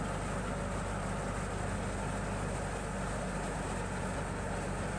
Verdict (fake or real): real